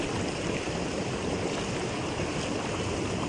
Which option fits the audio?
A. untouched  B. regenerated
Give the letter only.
A